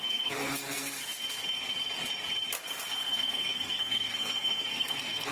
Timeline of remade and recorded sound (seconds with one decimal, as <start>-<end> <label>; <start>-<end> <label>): 0.0-1.0 remade; 1.0-3.0 recorded; 3.0-5.3 remade